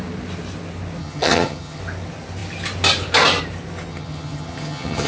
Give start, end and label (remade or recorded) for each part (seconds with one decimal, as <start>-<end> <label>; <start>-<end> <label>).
0.0-1.0 recorded; 1.0-1.8 remade; 1.8-3.9 recorded; 3.9-5.1 remade